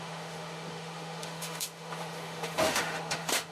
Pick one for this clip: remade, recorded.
remade